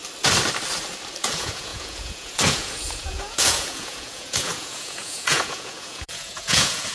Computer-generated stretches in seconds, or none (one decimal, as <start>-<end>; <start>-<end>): 1.2-6.9